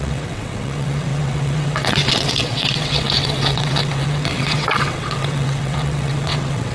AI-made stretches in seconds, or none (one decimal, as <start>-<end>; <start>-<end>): 0.0-6.7